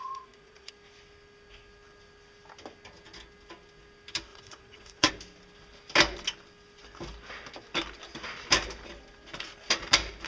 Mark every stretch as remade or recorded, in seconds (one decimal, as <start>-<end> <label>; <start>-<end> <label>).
0.0-0.7 remade; 0.7-4.3 recorded; 4.3-5.1 remade; 5.1-10.3 recorded